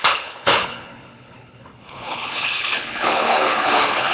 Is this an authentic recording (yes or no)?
no